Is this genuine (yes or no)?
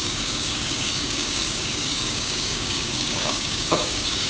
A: no